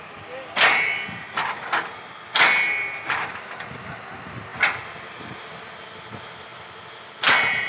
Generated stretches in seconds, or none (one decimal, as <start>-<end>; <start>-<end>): none